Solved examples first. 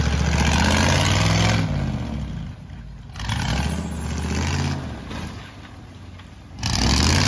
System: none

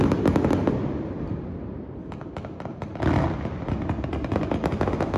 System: none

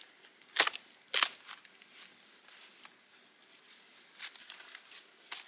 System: none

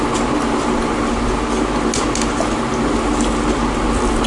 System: none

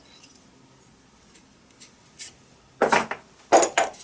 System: none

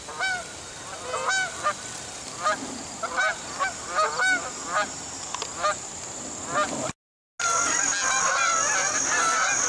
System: none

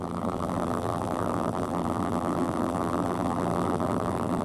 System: vocoder, BigVGAN v2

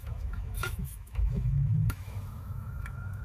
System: autoencoder, DAC-VAE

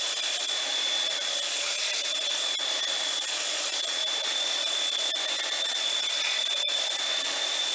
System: none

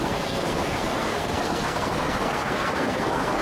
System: codec, SNAC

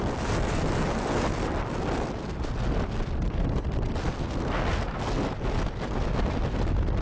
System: none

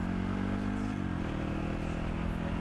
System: none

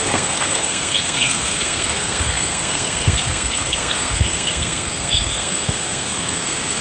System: codec, SNAC